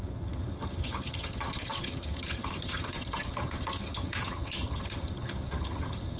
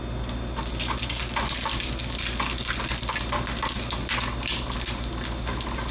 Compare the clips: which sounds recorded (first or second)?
second